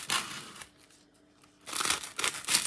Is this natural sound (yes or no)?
yes